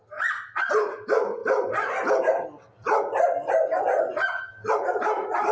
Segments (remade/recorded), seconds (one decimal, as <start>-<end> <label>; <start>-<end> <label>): 0.0-5.5 recorded